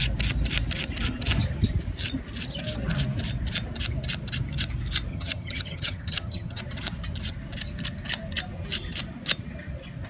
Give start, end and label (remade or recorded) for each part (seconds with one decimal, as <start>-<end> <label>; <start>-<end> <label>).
0.0-5.1 recorded; 5.1-6.6 remade; 6.6-10.1 recorded